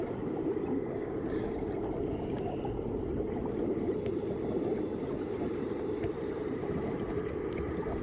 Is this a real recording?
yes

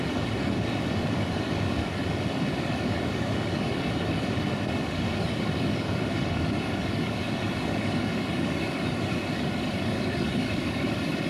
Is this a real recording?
no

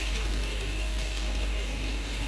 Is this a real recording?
no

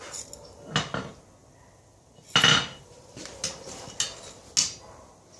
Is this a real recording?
yes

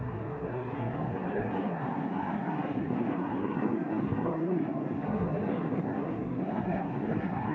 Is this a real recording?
no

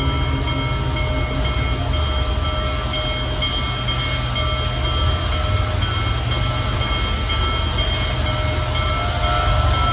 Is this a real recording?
yes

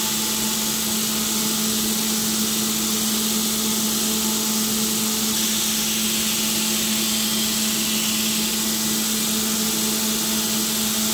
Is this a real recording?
yes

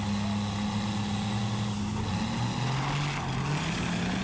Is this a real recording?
yes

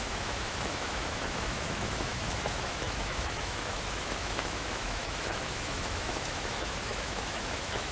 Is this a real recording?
no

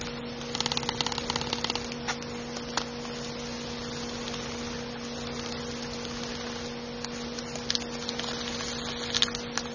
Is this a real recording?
yes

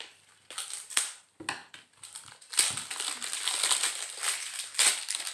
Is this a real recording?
yes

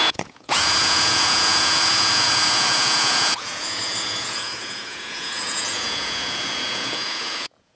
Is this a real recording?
no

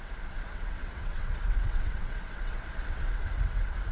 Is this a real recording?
no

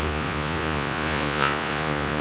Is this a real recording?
no